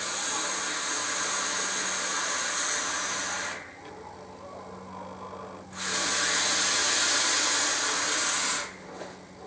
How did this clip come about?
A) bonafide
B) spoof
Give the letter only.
A